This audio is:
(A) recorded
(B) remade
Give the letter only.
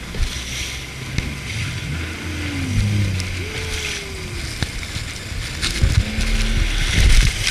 A